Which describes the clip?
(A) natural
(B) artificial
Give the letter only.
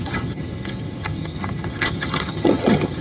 B